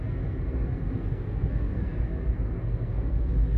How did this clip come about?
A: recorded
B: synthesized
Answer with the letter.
B